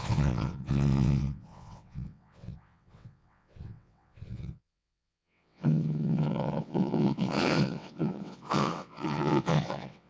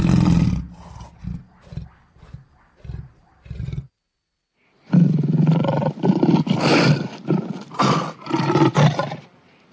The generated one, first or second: first